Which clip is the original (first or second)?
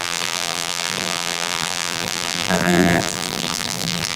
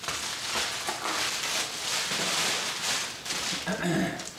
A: second